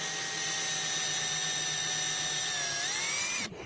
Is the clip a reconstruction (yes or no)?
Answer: no